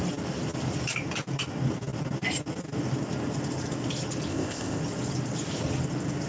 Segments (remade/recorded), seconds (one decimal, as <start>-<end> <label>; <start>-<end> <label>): 0.0-4.3 recorded; 4.3-4.8 remade; 4.8-6.3 recorded